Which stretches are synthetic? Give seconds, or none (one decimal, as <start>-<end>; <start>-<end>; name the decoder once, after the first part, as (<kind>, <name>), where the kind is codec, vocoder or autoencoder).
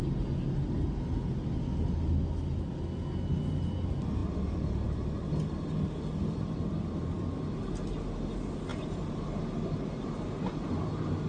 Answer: 8.7-10.1 (vocoder, BigVGAN v2)